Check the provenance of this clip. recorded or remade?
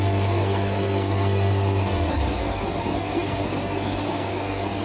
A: remade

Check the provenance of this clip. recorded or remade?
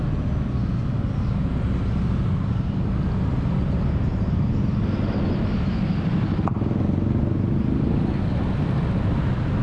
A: recorded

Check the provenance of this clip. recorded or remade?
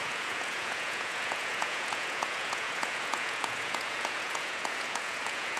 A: remade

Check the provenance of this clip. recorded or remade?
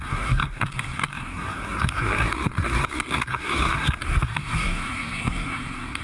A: remade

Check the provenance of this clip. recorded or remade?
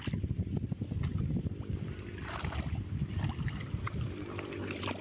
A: recorded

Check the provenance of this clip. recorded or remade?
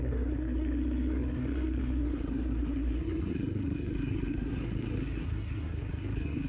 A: remade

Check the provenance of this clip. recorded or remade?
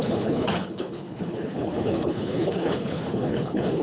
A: remade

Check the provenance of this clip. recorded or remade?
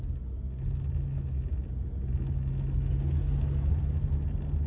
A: recorded